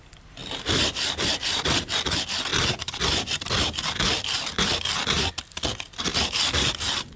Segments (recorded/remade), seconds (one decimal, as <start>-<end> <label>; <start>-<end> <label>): 0.0-0.4 recorded; 0.4-1.9 remade; 1.9-2.5 recorded; 2.5-5.3 remade; 5.3-7.2 recorded